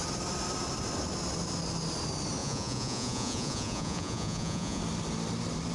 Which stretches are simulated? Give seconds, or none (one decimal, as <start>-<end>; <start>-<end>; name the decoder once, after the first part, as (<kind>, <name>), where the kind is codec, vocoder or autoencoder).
2.4-4.8 (vocoder, Vocos)